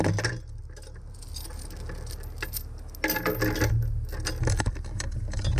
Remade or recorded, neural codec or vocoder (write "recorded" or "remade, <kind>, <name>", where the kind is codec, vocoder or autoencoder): recorded